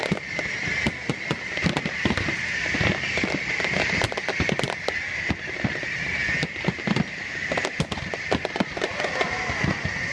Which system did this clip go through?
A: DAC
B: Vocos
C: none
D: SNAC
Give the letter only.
C